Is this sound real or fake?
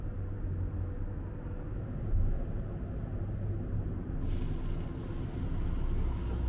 real